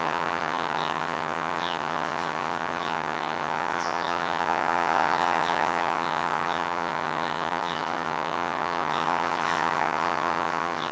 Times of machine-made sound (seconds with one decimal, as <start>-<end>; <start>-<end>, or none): 0.0-10.9